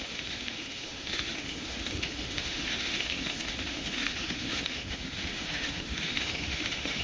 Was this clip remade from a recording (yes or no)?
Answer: yes